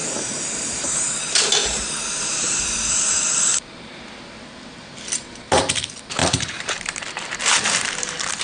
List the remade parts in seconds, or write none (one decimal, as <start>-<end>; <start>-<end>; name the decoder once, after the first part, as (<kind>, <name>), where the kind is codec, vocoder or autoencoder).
0.0-1.2 (vocoder, BigVGAN v2); 1.6-2.9; 3.5-4.0; 6.2-8.4